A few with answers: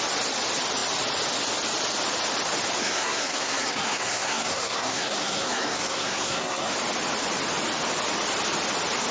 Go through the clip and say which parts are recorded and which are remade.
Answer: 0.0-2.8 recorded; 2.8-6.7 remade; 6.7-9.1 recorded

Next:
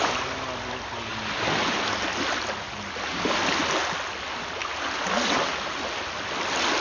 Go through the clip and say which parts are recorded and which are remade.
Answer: 0.0-6.8 recorded

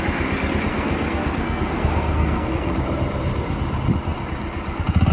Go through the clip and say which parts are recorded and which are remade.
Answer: 0.0-0.7 recorded; 0.7-2.7 remade; 2.7-5.1 recorded

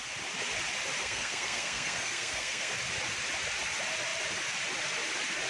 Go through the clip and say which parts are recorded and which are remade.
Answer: 0.0-1.0 recorded; 1.0-2.7 remade; 2.7-5.5 recorded

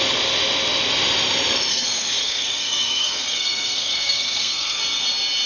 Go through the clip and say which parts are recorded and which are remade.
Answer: 0.0-1.7 recorded; 1.7-4.8 remade; 4.8-5.5 recorded